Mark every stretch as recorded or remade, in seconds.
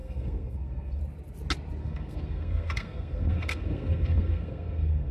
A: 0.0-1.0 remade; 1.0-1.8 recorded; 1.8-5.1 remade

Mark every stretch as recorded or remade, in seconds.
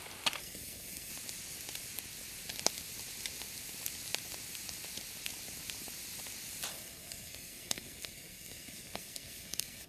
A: 0.0-0.4 recorded; 0.4-1.1 remade; 1.1-6.7 recorded; 6.7-9.9 remade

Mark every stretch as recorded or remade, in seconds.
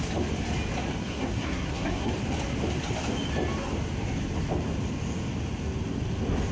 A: 0.0-1.0 recorded; 1.0-2.1 remade; 2.1-6.5 recorded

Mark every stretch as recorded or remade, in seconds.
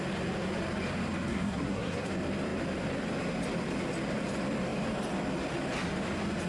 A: 0.0-1.3 recorded; 1.3-2.1 remade; 2.1-6.5 recorded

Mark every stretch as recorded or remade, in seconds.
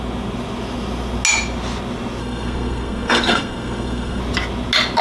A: 0.0-2.2 recorded; 2.2-4.2 remade; 4.2-5.0 recorded